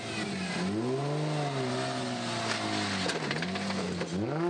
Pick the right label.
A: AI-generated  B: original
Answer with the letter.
B